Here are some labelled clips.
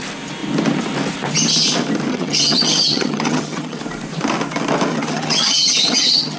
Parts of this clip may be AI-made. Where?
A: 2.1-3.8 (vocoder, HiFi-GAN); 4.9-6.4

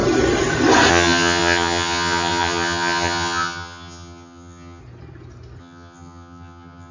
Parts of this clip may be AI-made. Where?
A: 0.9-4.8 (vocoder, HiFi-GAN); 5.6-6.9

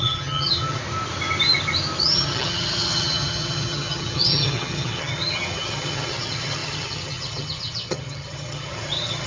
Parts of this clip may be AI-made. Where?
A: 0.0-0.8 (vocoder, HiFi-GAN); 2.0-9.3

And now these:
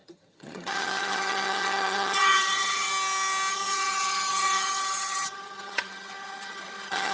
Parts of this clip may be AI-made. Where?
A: 0.0-2.9 (vocoder, HiFi-GAN); 3.5-7.1